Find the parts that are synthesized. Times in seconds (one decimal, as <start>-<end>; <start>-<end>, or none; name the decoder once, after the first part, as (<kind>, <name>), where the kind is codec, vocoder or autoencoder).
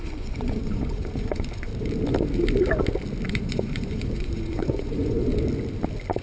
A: 0.0-1.7 (vocoder, Vocos); 3.3-5.3